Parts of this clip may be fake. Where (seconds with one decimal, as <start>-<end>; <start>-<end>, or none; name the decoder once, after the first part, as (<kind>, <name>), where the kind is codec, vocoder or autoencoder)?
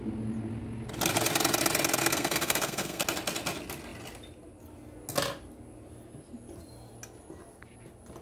2.0-3.0 (codec, SNAC)